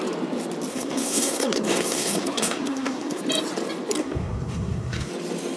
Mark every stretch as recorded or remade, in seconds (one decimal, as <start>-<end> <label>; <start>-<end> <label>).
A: 0.0-0.7 recorded; 0.7-3.2 remade; 3.2-4.0 recorded; 4.0-5.1 remade; 5.1-5.6 recorded